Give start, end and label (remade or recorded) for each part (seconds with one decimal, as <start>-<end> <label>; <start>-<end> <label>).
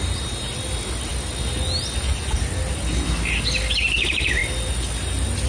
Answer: 0.0-5.5 recorded